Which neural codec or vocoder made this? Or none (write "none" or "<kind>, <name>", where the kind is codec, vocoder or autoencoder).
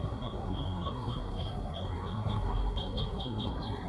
codec, SNAC